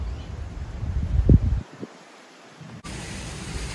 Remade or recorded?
recorded